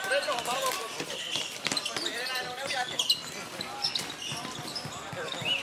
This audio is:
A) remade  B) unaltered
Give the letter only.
A